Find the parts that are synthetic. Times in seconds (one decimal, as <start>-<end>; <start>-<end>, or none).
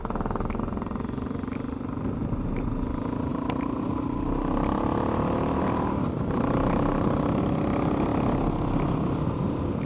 3.3-7.4